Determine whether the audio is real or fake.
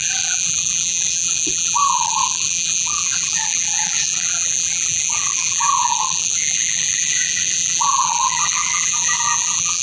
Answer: fake